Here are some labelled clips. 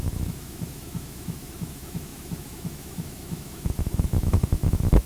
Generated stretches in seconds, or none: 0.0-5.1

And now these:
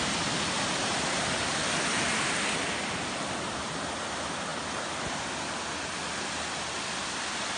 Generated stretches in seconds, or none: none

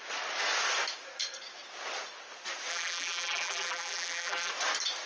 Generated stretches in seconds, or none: 2.7-4.5